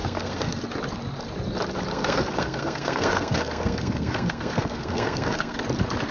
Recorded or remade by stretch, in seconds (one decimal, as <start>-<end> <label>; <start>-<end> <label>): 0.0-0.6 remade; 0.6-1.9 recorded; 1.9-5.6 remade; 5.6-6.1 recorded